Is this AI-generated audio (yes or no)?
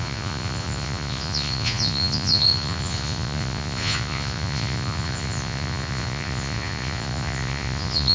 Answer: yes